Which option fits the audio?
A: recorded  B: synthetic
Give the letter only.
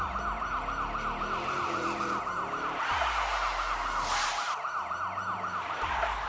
A